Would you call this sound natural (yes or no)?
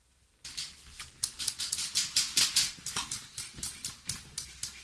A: yes